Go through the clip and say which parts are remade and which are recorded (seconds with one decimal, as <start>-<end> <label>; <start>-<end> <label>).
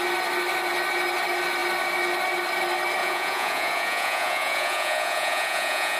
0.0-3.0 recorded; 3.0-6.0 remade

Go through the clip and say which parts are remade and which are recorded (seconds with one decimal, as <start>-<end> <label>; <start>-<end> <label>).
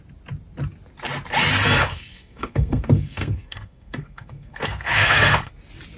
0.0-1.9 recorded; 1.9-5.5 remade; 5.5-6.0 recorded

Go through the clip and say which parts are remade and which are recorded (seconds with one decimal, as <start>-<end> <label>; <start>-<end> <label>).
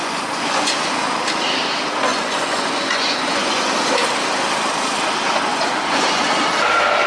0.0-0.9 remade; 0.9-2.1 recorded; 2.1-3.7 remade; 3.7-5.5 recorded; 5.5-6.2 remade; 6.2-7.1 recorded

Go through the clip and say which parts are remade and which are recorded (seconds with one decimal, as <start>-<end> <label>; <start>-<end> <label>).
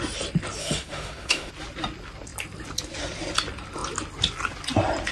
0.0-0.6 recorded; 0.6-1.5 remade; 1.5-5.1 recorded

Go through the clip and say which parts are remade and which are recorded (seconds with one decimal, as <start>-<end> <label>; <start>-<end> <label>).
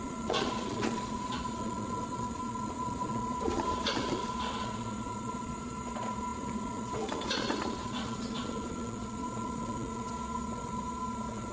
0.0-11.5 remade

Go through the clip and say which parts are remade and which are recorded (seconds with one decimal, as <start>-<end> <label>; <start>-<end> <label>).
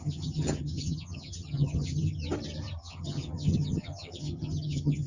0.0-2.2 remade; 2.2-2.8 recorded; 2.8-5.1 remade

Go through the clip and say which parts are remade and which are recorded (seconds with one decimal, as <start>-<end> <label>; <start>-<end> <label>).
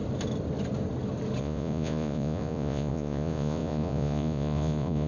0.0-1.4 recorded; 1.4-5.1 remade